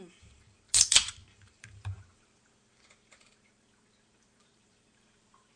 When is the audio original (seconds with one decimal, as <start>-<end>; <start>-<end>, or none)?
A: none